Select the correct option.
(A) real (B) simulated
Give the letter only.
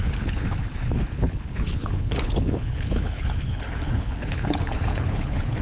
B